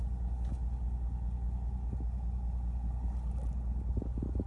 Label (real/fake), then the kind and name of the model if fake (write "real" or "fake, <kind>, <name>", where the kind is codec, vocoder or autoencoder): real